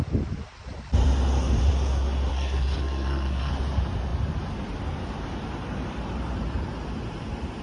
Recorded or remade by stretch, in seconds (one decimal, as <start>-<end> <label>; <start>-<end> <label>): 0.0-2.3 recorded; 2.3-3.5 remade; 3.5-7.6 recorded